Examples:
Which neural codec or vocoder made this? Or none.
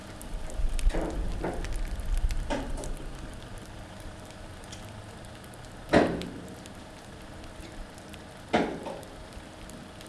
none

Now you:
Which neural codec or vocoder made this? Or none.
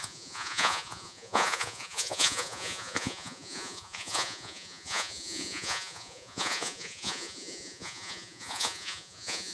vocoder, Vocos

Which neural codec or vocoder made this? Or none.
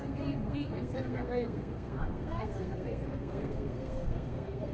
codec, SNAC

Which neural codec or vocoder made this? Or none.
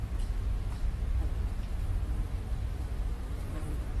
none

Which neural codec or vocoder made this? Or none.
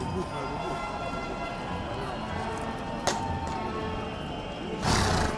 none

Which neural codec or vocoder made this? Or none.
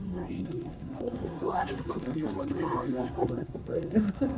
codec, SNAC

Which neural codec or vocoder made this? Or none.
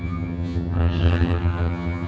vocoder, HiFi-GAN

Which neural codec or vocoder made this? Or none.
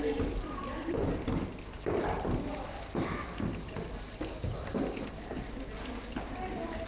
vocoder, BigVGAN v2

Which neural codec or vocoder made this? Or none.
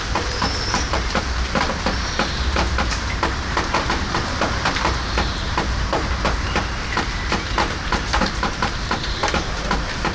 vocoder, BigVGAN v2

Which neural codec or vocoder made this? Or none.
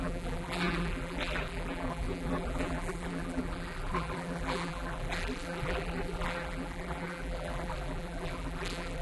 vocoder, BigVGAN v2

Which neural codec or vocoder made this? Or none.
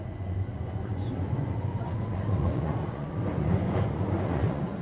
vocoder, Vocos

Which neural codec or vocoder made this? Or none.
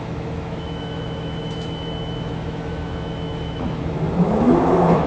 autoencoder, DAC-VAE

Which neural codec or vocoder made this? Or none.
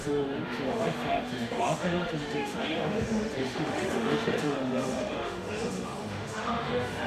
autoencoder, DAC-VAE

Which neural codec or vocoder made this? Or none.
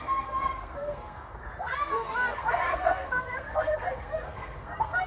codec, SNAC